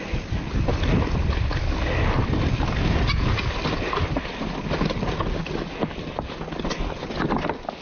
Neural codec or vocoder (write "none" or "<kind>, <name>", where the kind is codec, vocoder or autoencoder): none